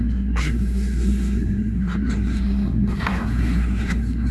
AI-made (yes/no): yes